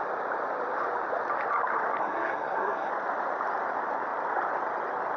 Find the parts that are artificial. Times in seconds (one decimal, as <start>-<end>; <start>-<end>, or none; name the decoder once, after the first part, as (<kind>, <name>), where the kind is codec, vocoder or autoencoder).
2.0-2.9 (codec, SNAC)